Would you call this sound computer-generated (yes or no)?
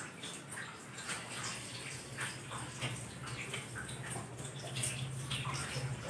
no